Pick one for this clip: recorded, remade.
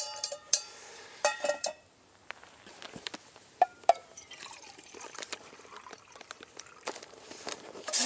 remade